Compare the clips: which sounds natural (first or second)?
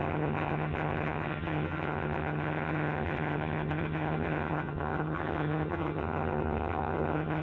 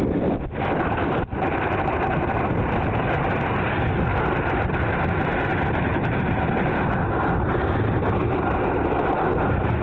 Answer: second